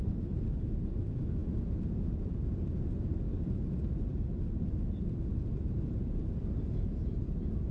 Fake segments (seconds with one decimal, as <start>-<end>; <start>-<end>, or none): 4.1-4.6; 5.5-7.7